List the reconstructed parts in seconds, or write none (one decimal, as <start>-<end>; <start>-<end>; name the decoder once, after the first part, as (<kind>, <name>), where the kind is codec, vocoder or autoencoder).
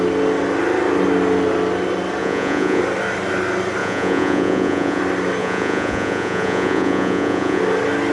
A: 2.2-2.8 (vocoder, Vocos); 3.8-5.0; 5.4-7.6